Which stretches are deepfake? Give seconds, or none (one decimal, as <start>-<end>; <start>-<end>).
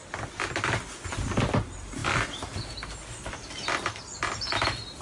none